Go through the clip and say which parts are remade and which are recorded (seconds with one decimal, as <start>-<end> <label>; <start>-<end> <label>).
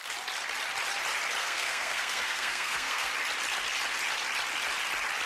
0.0-1.4 recorded; 1.4-3.1 remade; 3.1-5.3 recorded